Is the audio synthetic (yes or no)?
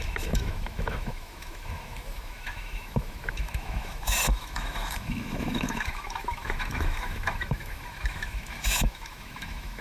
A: yes